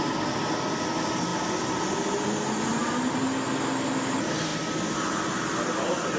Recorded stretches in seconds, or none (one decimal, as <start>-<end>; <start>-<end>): 0.0-6.2